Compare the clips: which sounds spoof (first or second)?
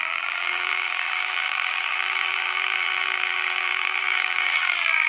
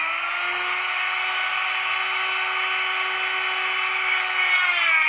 first